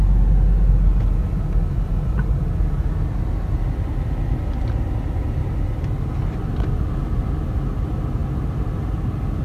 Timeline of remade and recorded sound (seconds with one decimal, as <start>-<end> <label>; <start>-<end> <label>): 0.0-9.4 recorded